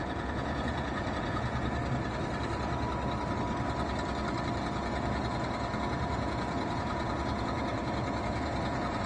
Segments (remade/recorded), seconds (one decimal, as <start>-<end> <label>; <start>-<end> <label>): 0.0-1.8 remade; 1.8-4.6 recorded; 4.6-9.1 remade